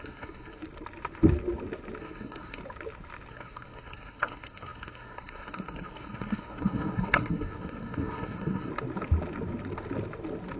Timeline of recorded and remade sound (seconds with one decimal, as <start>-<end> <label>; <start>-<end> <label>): 0.0-0.6 remade; 0.6-2.0 recorded; 2.0-2.6 remade; 2.6-3.3 recorded; 3.3-8.7 remade; 8.7-10.6 recorded